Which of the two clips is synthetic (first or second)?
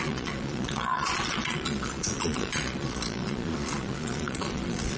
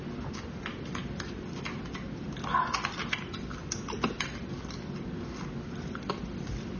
first